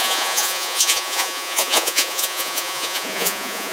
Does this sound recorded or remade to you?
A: remade